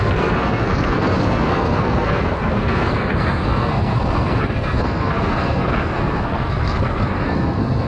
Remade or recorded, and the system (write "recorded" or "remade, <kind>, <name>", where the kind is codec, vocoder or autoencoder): remade, codec, SNAC